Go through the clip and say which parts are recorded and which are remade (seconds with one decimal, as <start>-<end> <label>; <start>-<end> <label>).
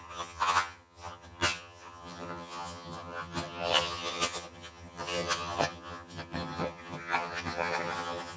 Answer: 0.0-8.4 remade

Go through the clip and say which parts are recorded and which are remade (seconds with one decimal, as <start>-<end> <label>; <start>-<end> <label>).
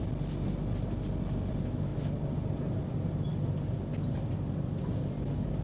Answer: 0.0-5.6 recorded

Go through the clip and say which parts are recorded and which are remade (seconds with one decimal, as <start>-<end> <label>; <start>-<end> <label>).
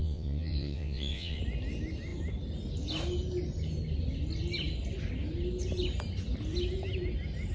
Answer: 0.0-1.4 remade; 1.4-7.5 recorded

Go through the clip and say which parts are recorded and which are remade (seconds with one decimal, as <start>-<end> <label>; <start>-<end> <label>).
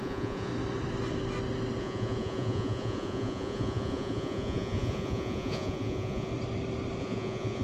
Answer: 0.0-0.5 remade; 0.5-1.8 recorded; 1.8-6.3 remade; 6.3-7.0 recorded; 7.0-7.6 remade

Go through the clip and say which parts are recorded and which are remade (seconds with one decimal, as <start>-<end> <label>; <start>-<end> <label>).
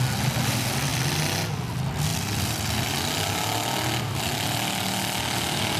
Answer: 0.0-5.8 recorded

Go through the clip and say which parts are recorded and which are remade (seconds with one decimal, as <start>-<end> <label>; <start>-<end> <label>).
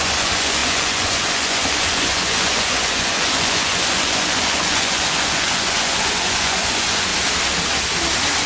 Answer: 0.0-7.1 remade; 7.1-8.5 recorded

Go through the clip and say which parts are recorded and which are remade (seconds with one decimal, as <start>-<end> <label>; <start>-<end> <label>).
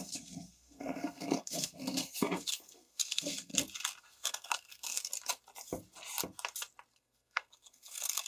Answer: 0.0-3.5 remade; 3.5-4.0 recorded; 4.0-5.1 remade; 5.1-6.9 recorded; 6.9-8.3 remade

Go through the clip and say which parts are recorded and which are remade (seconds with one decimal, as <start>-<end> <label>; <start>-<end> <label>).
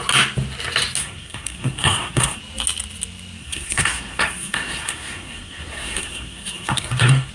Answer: 0.0-1.0 recorded; 1.0-2.4 remade; 2.4-3.4 recorded; 3.4-7.3 remade